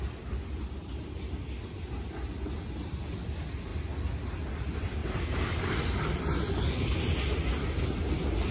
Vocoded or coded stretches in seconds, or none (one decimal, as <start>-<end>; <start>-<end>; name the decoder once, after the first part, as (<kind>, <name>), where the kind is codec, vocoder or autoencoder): 5.0-6.7 (vocoder, BigVGAN v2)